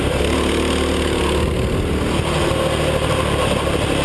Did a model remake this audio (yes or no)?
no